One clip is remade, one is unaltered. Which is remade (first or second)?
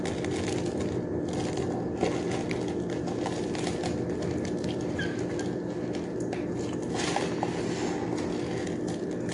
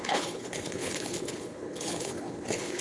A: second